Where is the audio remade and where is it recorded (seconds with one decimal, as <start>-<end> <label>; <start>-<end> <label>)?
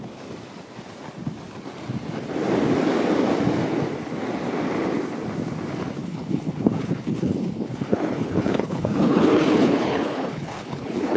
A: 0.0-6.0 recorded; 6.0-11.2 remade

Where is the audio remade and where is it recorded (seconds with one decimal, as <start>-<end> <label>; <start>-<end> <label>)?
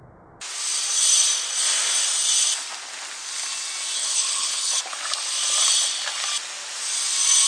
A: 0.0-4.0 recorded; 4.0-4.8 remade; 4.8-7.5 recorded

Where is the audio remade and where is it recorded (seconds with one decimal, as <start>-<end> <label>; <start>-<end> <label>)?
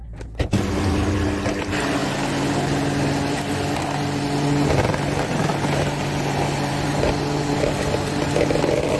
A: 0.0-9.0 recorded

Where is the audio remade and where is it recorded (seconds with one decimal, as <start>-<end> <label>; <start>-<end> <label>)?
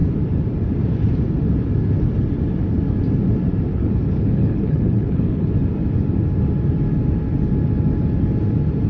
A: 0.0-3.7 recorded; 3.7-5.5 remade; 5.5-8.9 recorded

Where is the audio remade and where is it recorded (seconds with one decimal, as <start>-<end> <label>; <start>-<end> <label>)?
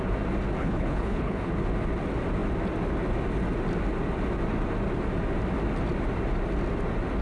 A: 0.0-0.6 recorded; 0.6-1.5 remade; 1.5-7.2 recorded